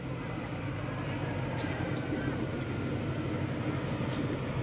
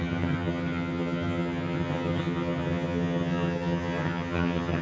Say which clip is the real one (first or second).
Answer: first